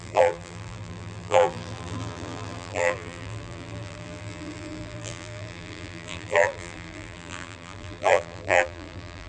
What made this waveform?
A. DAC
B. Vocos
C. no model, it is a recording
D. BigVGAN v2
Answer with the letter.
D